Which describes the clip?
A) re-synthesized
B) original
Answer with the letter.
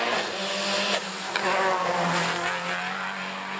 B